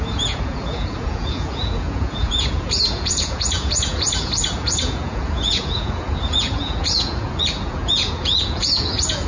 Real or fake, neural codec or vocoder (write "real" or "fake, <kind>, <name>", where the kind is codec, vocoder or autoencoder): fake, vocoder, Vocos